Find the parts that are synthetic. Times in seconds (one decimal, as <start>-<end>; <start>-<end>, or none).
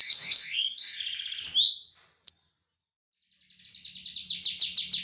0.0-1.0